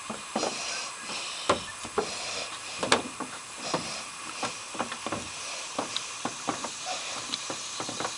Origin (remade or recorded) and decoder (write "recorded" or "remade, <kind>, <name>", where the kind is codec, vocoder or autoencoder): remade, vocoder, BigVGAN v2